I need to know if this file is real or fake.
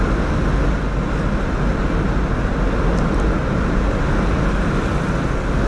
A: real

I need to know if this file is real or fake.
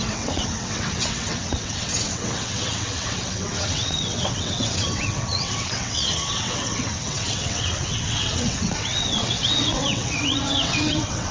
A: fake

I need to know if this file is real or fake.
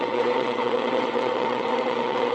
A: fake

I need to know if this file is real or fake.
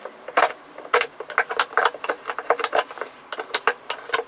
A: real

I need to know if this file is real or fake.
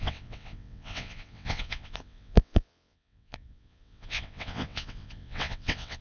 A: fake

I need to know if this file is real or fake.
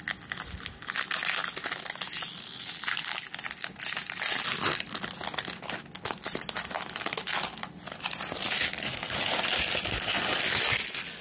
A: real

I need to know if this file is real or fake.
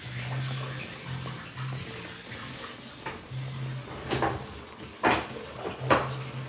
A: real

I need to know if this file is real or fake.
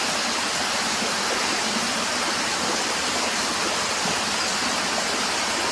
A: real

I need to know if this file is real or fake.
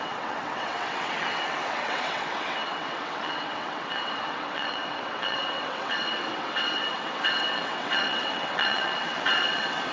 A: fake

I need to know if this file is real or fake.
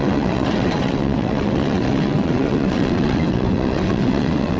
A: fake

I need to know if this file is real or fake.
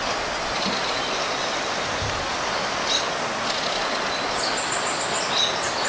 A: real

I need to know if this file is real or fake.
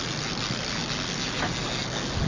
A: real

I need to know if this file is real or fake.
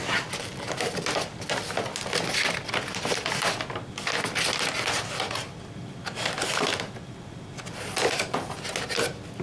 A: real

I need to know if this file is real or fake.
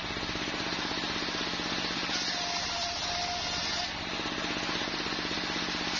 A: real